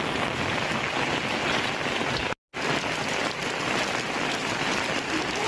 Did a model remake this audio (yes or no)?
no